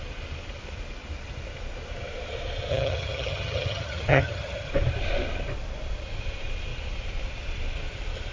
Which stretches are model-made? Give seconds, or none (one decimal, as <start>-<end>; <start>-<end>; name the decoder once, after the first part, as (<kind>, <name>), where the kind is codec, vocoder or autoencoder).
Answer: 2.7-4.7 (vocoder, HiFi-GAN)